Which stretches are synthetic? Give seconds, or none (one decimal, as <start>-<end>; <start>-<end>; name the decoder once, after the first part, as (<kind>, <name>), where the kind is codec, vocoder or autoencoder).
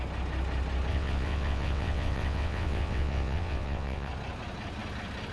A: 0.9-4.1 (vocoder, WaveNeXt)